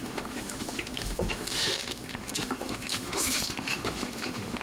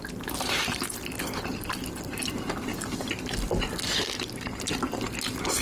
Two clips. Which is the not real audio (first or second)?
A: first